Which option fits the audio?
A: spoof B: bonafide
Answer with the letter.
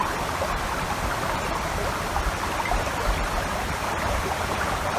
B